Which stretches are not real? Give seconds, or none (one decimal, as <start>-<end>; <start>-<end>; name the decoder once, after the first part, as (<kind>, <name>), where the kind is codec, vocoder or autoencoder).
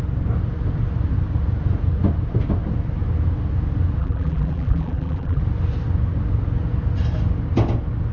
4.0-5.4 (vocoder, BigVGAN v2)